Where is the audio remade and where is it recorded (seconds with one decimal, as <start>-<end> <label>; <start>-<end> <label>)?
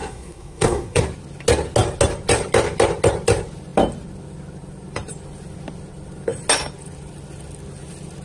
0.0-1.0 remade; 1.0-8.2 recorded